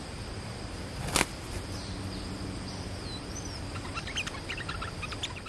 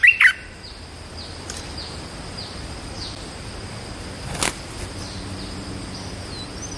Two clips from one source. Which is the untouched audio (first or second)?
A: second